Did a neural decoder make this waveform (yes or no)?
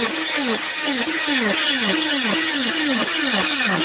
yes